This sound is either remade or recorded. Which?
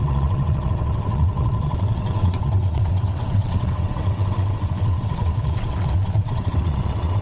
remade